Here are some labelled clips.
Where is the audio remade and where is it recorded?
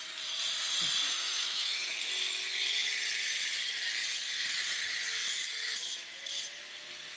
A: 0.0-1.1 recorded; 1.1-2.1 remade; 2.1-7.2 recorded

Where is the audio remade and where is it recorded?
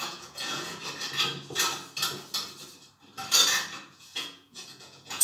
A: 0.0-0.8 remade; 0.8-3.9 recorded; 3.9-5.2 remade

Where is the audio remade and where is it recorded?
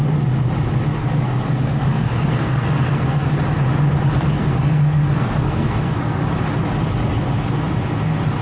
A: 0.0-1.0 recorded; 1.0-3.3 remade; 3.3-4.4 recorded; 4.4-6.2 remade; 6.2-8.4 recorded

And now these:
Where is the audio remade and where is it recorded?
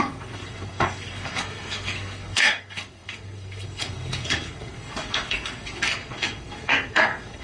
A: 0.0-7.4 remade